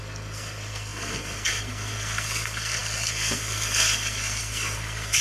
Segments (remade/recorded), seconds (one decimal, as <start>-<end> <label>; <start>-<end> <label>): 0.0-5.2 remade